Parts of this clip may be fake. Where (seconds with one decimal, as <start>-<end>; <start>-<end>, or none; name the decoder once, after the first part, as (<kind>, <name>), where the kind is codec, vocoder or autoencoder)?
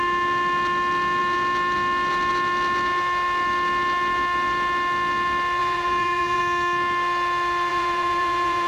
5.6-6.4 (vocoder, Vocos); 7.7-8.7